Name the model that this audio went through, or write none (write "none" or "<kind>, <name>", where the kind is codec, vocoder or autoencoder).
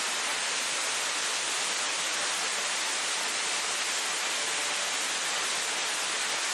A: none